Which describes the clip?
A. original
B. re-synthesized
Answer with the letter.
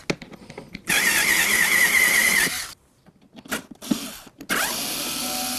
A